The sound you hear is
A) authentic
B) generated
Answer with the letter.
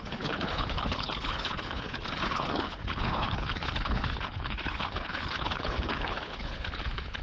B